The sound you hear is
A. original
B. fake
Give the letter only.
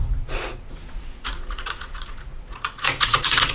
B